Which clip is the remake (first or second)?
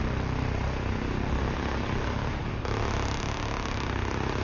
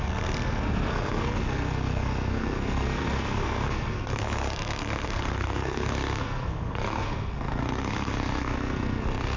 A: second